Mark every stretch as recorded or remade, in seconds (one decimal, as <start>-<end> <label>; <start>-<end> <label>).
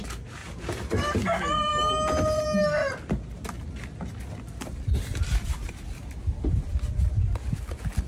0.0-0.4 recorded; 0.4-0.9 remade; 0.9-5.1 recorded; 5.1-6.7 remade; 6.7-8.1 recorded